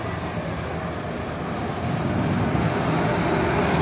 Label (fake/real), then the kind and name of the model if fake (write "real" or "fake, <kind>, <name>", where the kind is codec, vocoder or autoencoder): real